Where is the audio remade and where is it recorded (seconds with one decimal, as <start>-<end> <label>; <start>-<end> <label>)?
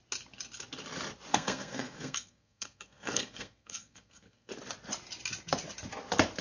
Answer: 0.0-1.3 recorded; 1.3-4.5 remade; 4.5-6.4 recorded